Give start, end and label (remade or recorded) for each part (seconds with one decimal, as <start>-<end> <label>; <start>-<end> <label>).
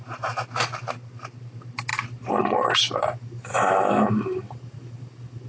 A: 0.0-3.5 recorded; 3.5-4.9 remade; 4.9-5.5 recorded